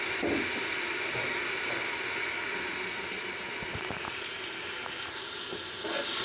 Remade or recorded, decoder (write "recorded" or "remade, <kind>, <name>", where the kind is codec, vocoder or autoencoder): recorded